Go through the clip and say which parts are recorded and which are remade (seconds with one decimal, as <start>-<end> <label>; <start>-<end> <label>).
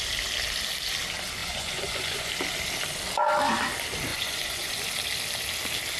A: 0.0-1.4 recorded; 1.4-2.3 remade; 2.3-4.1 recorded; 4.1-4.7 remade; 4.7-6.0 recorded